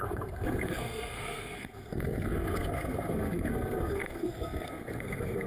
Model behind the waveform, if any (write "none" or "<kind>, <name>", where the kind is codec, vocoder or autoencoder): codec, SNAC